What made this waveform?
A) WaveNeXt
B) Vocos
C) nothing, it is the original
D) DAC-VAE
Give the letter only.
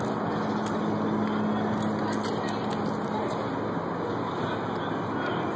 C